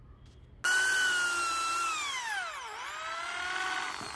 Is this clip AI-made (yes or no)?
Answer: no